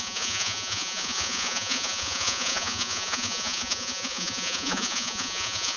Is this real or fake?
fake